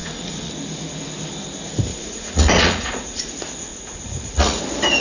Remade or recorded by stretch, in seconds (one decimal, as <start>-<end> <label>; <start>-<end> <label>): 0.0-0.5 remade; 0.5-1.9 recorded; 1.9-3.3 remade; 3.3-3.7 recorded; 3.7-4.6 remade; 4.6-5.0 recorded